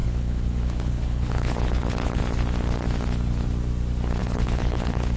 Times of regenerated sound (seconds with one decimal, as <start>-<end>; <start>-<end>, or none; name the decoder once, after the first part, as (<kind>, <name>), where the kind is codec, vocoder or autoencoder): 0.0-2.2 (codec, HILCodec); 4.2-5.2